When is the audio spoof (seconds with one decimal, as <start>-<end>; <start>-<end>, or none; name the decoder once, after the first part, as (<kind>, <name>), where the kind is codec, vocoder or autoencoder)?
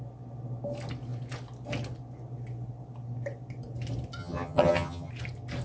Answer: 4.2-5.1 (vocoder, HiFi-GAN)